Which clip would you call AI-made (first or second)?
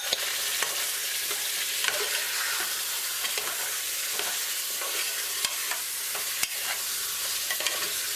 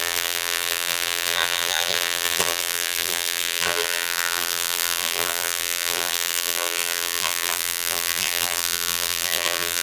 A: second